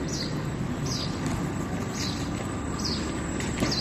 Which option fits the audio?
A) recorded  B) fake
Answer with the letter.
A